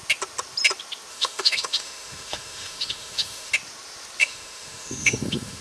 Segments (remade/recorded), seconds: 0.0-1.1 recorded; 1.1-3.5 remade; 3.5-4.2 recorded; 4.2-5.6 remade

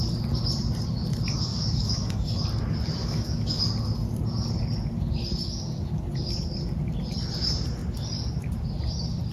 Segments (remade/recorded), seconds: 0.0-1.5 recorded; 1.5-2.4 remade; 2.4-3.0 recorded; 3.0-3.6 remade; 3.6-9.3 recorded

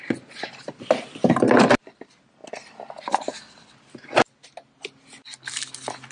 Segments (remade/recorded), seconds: 0.0-6.1 recorded

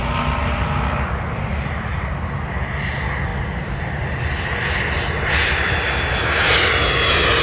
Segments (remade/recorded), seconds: 0.0-7.4 recorded